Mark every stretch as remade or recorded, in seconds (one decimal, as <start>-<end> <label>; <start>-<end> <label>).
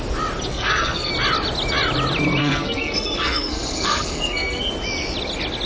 0.0-0.5 recorded; 0.5-1.1 remade; 1.1-2.4 recorded; 2.4-4.7 remade; 4.7-5.7 recorded